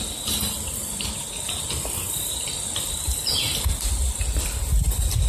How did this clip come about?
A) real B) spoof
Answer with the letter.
A